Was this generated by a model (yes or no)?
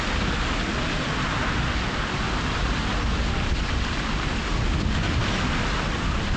no